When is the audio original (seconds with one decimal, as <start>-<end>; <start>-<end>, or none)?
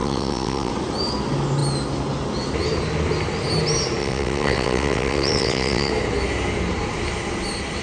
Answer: 0.7-4.0; 5.9-7.8